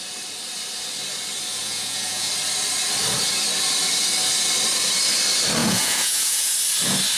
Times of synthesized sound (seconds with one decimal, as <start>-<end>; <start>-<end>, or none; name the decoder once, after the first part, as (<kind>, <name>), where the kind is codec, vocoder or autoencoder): 1.6-2.3 (vocoder, Vocos); 5.6-6.5